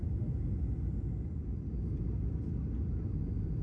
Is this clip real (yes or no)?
yes